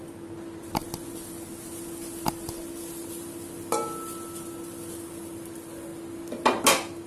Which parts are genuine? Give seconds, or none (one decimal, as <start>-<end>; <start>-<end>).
0.0-7.1